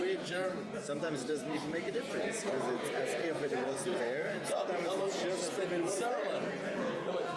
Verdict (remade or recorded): remade